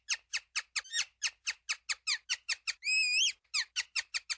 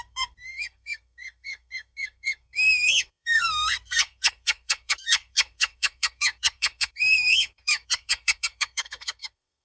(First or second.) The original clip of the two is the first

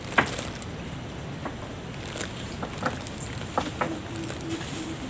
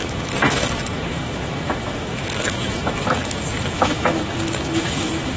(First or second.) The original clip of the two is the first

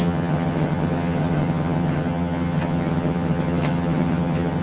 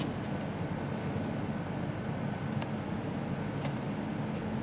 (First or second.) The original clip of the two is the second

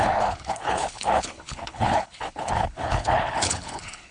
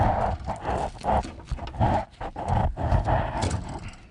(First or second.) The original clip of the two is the second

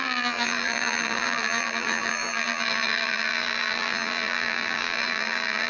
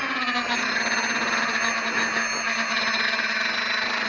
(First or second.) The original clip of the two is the second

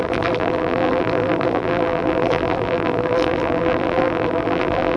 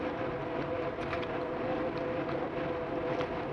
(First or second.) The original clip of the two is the second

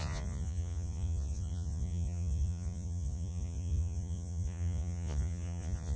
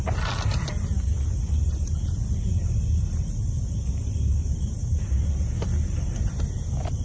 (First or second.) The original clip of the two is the second